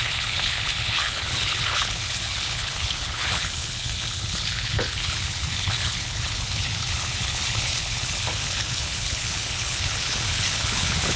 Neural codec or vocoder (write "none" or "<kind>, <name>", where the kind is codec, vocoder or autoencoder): codec, HILCodec